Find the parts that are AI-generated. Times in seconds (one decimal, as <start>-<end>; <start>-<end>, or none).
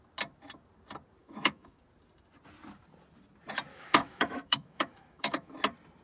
1.2-1.8; 3.7-5.5